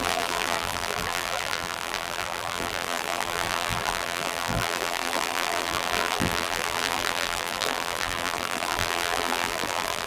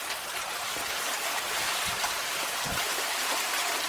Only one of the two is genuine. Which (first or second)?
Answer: second